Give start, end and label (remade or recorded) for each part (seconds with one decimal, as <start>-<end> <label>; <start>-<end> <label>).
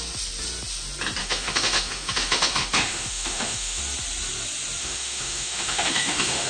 0.0-1.2 recorded; 1.2-3.8 remade; 3.8-4.8 recorded; 4.8-6.5 remade